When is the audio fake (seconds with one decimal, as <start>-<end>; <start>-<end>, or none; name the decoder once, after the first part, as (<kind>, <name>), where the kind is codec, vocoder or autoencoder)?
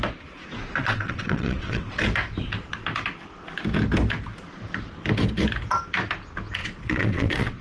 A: 0.8-2.0 (vocoder, WaveNeXt); 6.6-7.6